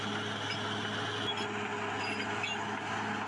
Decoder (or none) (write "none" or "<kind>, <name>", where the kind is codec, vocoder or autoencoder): none